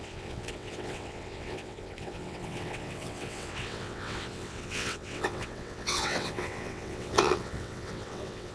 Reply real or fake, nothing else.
fake